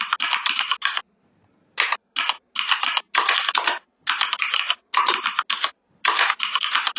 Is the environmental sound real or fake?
real